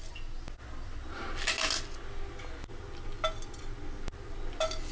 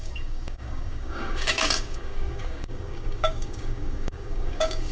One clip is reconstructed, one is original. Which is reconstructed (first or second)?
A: second